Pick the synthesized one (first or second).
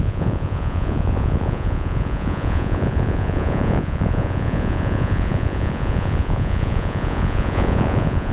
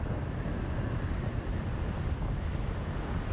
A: first